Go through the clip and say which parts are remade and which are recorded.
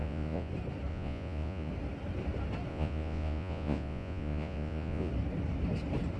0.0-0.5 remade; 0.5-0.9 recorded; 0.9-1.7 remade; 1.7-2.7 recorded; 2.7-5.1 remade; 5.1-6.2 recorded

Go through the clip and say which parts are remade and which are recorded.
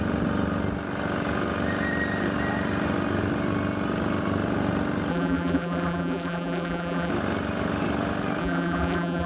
0.0-5.1 recorded; 5.1-7.1 remade; 7.1-8.4 recorded; 8.4-9.3 remade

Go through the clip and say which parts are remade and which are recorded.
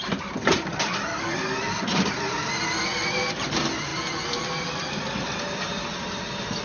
0.0-6.6 recorded